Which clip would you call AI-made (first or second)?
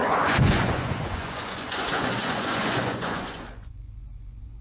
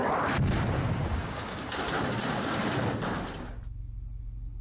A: first